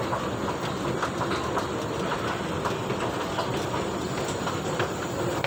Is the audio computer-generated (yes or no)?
no